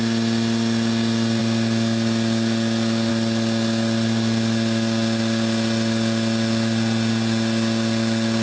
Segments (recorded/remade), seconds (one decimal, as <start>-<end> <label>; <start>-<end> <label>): 0.0-8.4 recorded